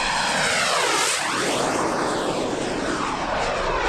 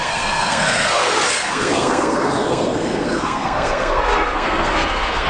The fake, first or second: second